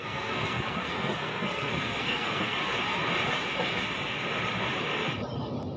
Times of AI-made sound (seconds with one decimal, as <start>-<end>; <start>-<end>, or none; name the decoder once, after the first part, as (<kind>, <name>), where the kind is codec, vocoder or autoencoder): 0.0-2.6 (codec, SNAC)